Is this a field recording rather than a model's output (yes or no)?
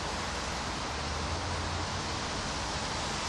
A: yes